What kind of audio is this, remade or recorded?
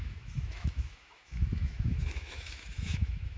remade